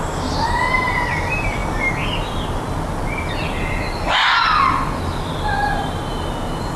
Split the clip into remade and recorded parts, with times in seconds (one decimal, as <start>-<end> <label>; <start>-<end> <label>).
0.0-6.8 recorded